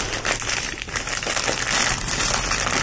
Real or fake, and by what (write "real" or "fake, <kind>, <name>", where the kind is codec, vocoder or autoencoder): real